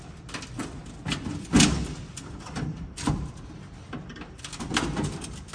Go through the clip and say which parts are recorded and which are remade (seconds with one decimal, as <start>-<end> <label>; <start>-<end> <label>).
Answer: 0.0-5.5 recorded